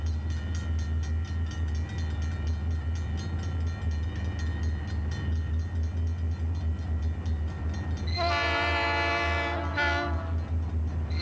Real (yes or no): yes